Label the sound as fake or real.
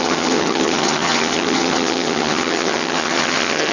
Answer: fake